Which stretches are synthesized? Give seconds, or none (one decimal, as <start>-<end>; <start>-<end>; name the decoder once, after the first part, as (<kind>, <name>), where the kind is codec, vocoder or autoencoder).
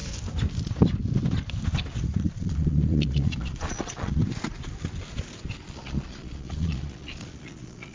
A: 2.2-4.2 (vocoder, Vocos); 5.6-7.9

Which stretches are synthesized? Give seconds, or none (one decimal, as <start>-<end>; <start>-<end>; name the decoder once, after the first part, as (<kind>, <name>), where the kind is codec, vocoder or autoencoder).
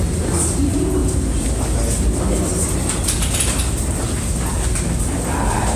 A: none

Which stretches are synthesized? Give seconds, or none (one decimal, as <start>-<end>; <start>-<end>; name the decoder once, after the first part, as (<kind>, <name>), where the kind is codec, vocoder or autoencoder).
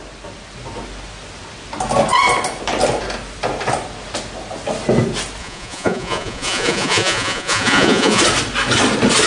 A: 5.4-8.2 (vocoder, Vocos)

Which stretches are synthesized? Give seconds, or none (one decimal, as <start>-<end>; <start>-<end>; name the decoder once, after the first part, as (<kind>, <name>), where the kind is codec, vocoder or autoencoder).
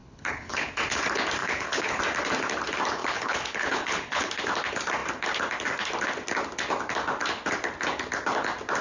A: 0.0-0.7 (codec, HILCodec); 1.4-2.0; 3.0-4.3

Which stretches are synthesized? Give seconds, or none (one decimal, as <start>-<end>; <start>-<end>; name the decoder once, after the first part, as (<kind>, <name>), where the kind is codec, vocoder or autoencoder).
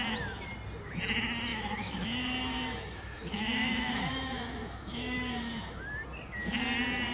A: 1.5-5.8 (autoencoder, DAC-VAE)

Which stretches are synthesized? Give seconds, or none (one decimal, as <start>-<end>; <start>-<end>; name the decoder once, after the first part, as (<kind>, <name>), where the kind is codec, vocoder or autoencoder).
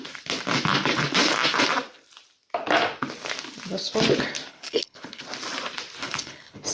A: 4.5-5.2 (codec, HILCodec); 6.0-6.7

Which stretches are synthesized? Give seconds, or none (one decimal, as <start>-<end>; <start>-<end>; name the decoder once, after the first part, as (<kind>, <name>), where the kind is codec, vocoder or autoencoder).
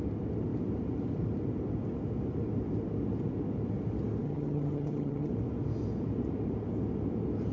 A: 4.2-5.3 (vocoder, HiFi-GAN)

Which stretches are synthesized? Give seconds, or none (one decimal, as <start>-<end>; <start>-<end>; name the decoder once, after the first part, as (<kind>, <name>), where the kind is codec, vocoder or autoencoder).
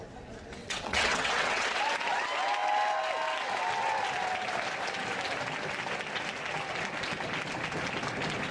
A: 0.6-1.8 (vocoder, WaveNeXt)